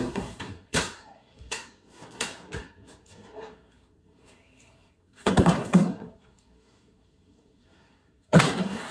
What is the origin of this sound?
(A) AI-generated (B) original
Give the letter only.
A